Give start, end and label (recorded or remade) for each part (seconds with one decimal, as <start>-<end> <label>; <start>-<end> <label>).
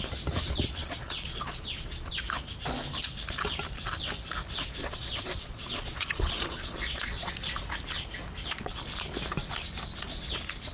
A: 0.0-0.8 recorded; 0.8-2.1 remade; 2.1-4.8 recorded; 4.8-7.3 remade; 7.3-10.7 recorded